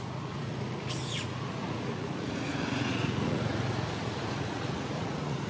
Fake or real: fake